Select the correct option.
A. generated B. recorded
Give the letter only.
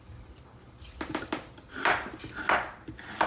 B